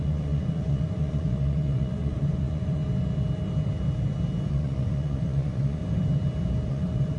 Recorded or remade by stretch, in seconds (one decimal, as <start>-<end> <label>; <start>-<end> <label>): 0.0-2.8 remade; 2.8-4.5 recorded; 4.5-5.8 remade; 5.8-6.7 recorded; 6.7-7.2 remade